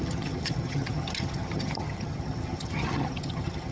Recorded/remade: remade